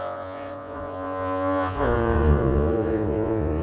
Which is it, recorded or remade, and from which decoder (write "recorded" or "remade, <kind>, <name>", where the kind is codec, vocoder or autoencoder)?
remade, vocoder, Vocos